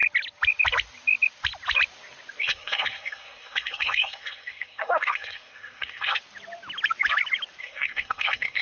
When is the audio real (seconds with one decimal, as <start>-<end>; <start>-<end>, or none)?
0.0-2.4; 6.2-7.6